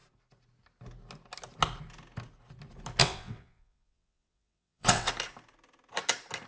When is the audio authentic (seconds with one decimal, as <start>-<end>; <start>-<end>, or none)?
0.0-3.0; 5.1-6.5